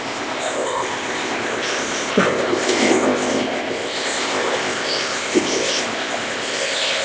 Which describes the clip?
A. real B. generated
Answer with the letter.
B